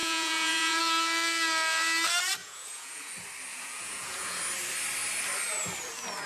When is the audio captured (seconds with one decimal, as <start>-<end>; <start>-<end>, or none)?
0.8-2.4; 3.1-3.5; 4.4-6.3